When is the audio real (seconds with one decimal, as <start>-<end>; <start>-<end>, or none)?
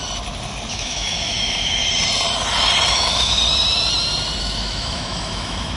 0.0-0.7; 1.8-2.9; 3.4-4.4